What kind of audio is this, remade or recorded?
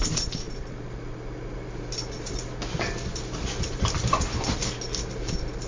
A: recorded